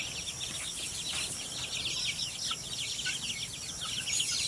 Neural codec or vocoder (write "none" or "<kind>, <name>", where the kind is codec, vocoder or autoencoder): none